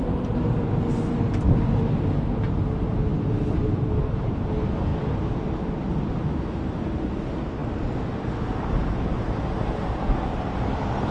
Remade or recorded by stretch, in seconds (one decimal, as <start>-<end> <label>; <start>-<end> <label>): 0.0-3.1 recorded; 3.1-4.5 remade; 4.5-11.1 recorded